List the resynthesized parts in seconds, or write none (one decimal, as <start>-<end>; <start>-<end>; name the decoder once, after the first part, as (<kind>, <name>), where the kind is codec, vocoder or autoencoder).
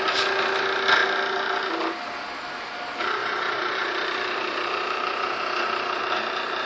3.2-6.0 (vocoder, BigVGAN v2)